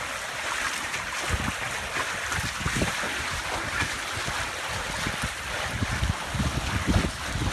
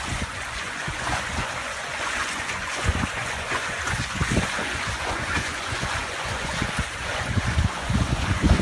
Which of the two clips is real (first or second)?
first